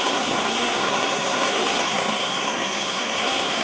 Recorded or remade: remade